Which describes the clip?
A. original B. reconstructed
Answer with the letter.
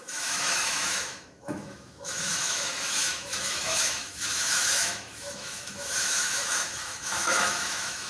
B